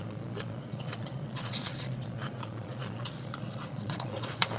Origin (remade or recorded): remade